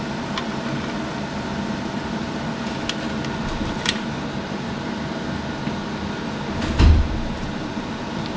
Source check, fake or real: real